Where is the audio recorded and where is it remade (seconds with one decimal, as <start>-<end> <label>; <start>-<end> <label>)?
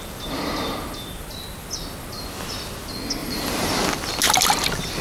0.0-3.2 recorded; 3.2-3.7 remade; 3.7-5.0 recorded